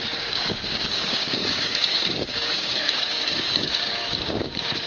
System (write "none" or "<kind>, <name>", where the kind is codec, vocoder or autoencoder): codec, DAC